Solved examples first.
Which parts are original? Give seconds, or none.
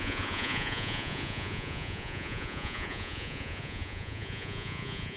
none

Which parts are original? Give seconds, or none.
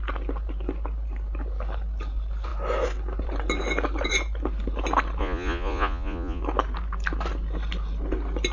0.0-5.2; 6.4-8.5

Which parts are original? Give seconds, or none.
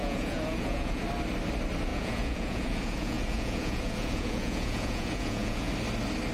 1.0-1.9; 5.7-6.3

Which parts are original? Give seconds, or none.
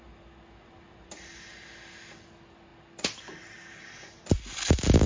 0.0-5.1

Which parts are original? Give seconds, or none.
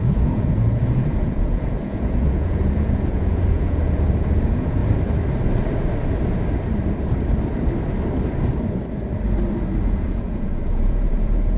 4.8-9.9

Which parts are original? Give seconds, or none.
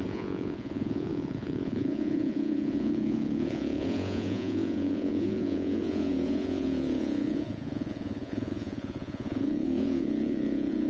none